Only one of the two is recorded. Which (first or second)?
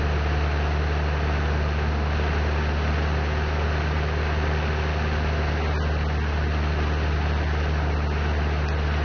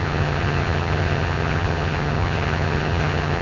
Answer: first